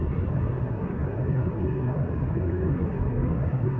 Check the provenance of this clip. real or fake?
fake